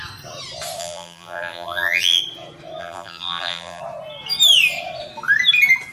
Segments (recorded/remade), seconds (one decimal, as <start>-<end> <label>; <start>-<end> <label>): 0.0-0.8 recorded; 0.8-2.2 remade; 2.2-2.8 recorded; 2.8-3.8 remade; 3.8-5.9 recorded